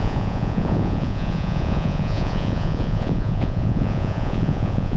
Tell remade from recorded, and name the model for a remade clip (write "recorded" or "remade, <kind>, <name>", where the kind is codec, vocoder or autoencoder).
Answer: remade, vocoder, Vocos